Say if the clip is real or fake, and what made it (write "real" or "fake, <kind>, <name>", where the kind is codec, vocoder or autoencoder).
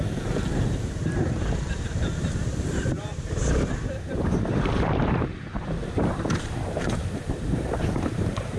fake, vocoder, BigVGAN v2